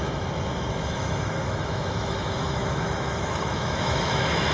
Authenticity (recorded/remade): remade